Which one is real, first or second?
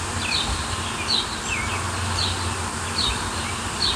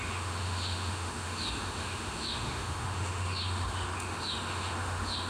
first